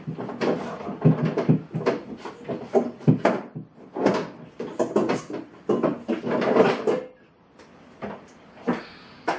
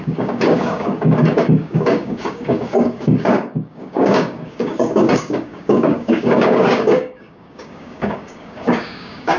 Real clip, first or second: first